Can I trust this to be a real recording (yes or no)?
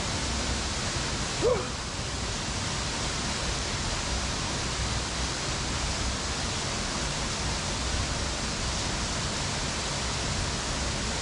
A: yes